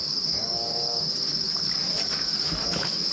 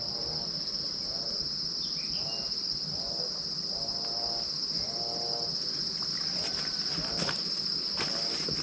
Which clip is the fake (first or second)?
first